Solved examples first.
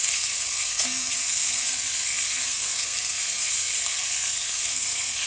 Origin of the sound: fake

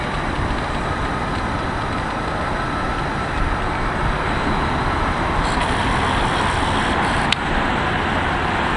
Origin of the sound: real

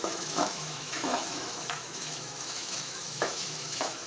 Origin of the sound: fake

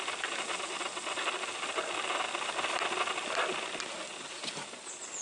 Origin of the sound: real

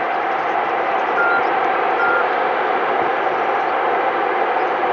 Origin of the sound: real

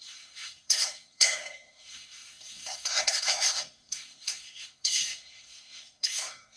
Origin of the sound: fake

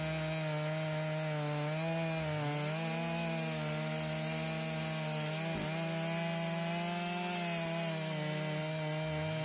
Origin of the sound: real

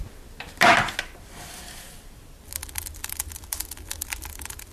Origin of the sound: real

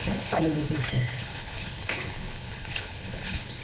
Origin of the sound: fake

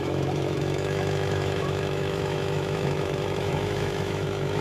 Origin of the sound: fake